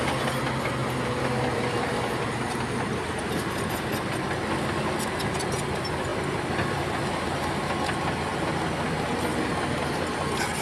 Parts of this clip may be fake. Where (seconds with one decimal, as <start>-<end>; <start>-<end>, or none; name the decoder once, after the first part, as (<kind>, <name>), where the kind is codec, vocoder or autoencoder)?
0.8-3.7 (vocoder, BigVGAN v2)